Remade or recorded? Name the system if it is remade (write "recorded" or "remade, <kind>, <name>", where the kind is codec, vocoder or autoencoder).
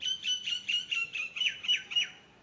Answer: recorded